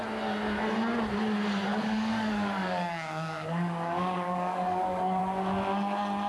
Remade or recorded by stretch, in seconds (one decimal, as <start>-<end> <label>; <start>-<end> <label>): 0.0-1.7 recorded; 1.7-5.2 remade; 5.2-6.3 recorded